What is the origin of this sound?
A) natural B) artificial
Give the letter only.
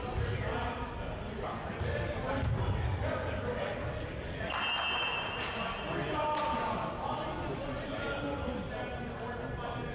A